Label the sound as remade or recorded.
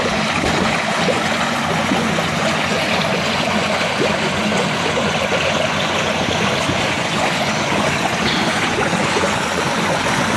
remade